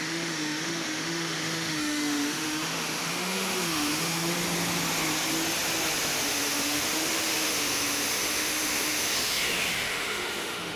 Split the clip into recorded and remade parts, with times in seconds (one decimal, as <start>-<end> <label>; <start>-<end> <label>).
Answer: 0.0-4.4 remade; 4.4-6.3 recorded; 6.3-10.8 remade